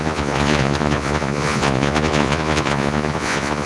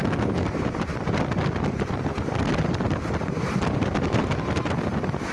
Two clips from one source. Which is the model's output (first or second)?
first